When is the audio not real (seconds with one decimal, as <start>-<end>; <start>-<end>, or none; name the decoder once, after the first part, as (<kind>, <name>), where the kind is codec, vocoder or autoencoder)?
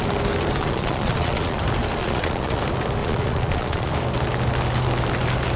0.6-1.6 (vocoder, Vocos); 2.0-2.6; 3.0-3.9